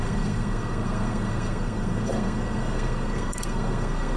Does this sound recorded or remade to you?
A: remade